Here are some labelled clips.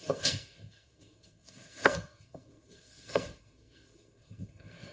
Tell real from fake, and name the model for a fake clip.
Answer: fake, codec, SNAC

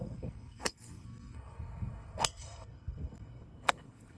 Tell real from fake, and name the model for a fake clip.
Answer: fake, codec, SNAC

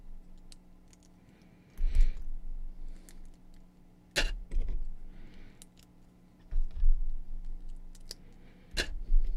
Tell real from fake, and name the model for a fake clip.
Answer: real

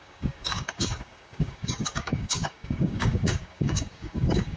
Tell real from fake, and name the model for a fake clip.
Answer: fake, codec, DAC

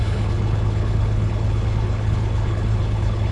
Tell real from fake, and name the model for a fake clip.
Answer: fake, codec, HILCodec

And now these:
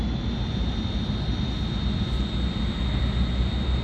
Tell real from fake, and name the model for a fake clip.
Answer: real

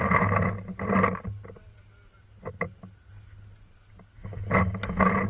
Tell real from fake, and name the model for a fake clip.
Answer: real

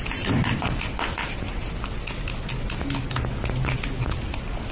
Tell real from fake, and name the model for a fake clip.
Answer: real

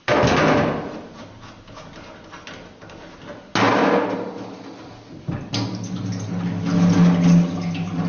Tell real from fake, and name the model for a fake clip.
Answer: real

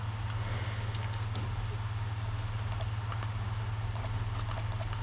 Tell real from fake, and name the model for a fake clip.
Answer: real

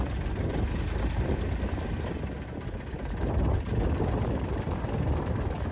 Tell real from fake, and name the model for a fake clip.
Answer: real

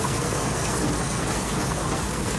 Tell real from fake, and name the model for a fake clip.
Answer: fake, codec, SNAC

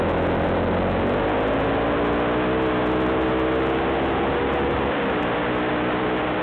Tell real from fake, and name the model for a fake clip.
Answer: real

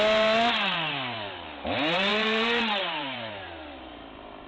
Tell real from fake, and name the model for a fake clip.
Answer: fake, vocoder, BigVGAN v2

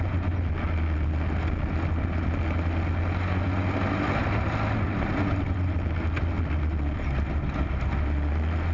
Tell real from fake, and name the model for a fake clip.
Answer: real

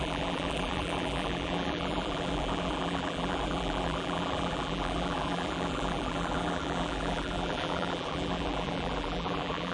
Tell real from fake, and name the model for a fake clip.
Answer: fake, vocoder, BigVGAN v2